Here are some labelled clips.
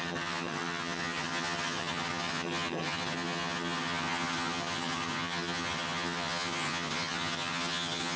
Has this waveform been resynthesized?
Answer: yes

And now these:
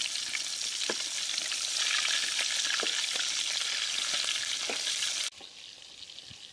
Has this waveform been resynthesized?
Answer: no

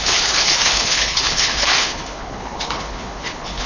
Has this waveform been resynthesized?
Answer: yes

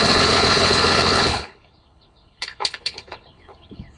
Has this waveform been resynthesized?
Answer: yes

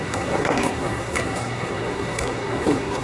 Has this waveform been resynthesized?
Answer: yes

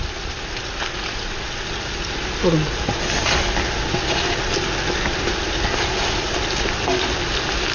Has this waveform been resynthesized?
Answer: no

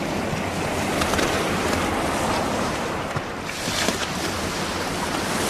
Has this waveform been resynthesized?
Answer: yes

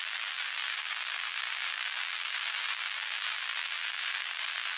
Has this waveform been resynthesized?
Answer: yes